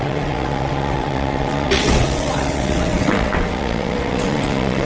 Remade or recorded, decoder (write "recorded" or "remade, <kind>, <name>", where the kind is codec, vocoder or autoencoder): remade, vocoder, WaveNeXt